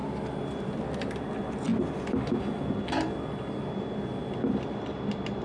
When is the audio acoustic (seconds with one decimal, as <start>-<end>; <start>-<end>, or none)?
0.0-5.4